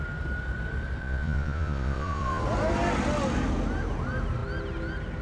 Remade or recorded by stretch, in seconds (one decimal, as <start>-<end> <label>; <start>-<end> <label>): 0.0-1.0 recorded; 1.0-2.4 remade; 2.4-5.2 recorded